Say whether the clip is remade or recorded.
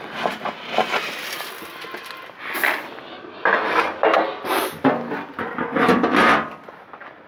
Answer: recorded